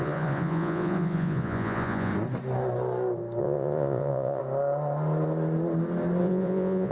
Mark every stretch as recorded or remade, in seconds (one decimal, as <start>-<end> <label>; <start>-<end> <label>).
0.0-2.1 remade; 2.1-3.4 recorded; 3.4-4.4 remade; 4.4-6.2 recorded; 6.2-6.9 remade